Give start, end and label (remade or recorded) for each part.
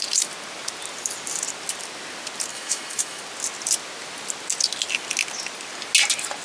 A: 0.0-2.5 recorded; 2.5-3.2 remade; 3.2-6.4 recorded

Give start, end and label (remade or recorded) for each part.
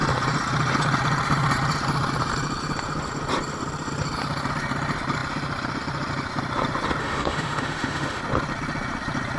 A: 0.0-7.0 recorded; 7.0-8.2 remade; 8.2-9.4 recorded